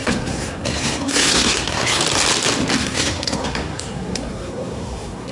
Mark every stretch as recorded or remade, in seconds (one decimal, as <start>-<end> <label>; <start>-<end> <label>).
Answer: 0.0-2.0 remade; 2.0-2.8 recorded; 2.8-5.3 remade